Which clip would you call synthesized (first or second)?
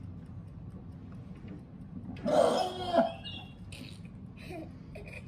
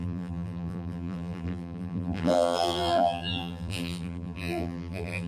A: second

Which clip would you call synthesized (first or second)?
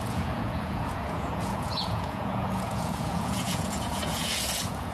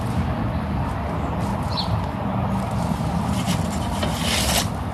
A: first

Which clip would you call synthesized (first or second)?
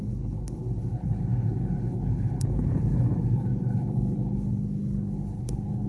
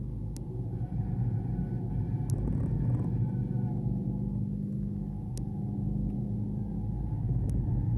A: first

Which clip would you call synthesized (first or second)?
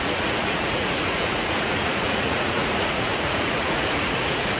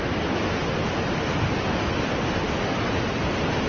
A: first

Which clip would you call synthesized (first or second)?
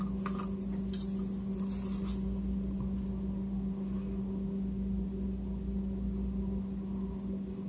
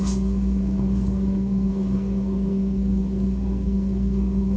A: second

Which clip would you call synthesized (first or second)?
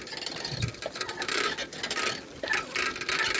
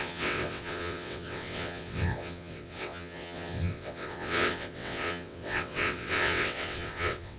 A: second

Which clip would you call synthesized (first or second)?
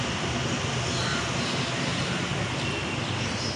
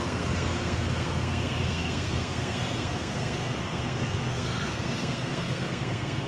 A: second